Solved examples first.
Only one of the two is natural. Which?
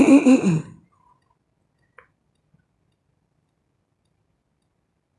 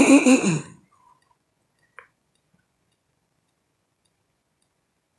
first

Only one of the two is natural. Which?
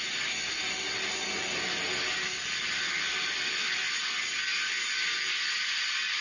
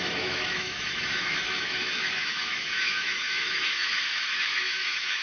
first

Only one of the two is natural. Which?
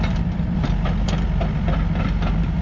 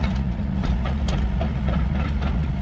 first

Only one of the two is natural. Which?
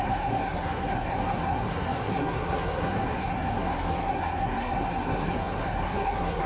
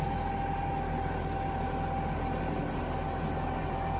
second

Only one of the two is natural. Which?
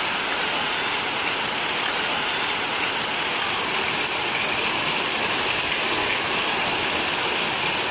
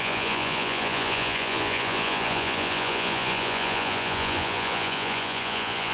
first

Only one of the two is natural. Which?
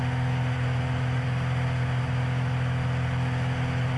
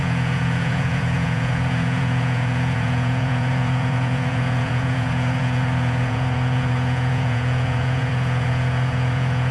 first